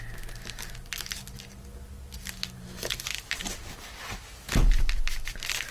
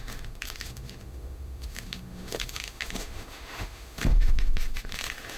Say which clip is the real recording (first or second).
first